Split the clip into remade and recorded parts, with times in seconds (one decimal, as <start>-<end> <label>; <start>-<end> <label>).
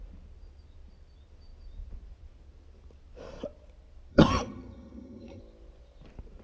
0.0-4.1 recorded; 4.1-5.4 remade; 5.4-6.4 recorded